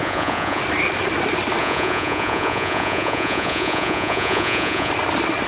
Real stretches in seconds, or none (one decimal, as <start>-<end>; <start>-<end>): 0.6-1.6; 4.9-5.5